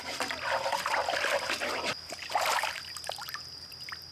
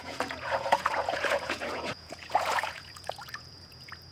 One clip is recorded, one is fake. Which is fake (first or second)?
second